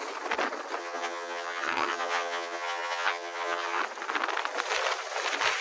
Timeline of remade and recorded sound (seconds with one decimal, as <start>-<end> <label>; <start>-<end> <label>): 0.0-0.8 recorded; 0.8-3.8 remade; 3.8-5.6 recorded